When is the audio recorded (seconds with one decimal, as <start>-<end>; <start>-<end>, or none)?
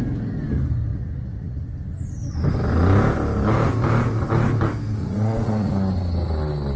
0.0-0.9; 1.6-5.0; 5.7-6.8